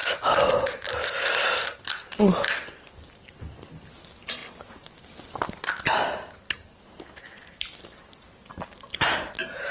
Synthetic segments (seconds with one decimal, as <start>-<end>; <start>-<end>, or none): none